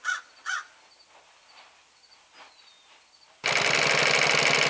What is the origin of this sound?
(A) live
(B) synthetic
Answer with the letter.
A